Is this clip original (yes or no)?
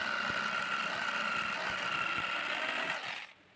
yes